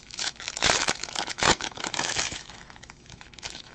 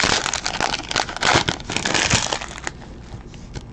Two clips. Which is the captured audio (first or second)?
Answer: second